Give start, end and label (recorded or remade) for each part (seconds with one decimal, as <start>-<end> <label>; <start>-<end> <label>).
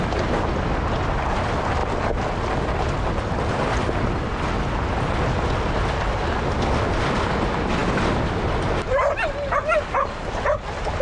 0.0-11.0 recorded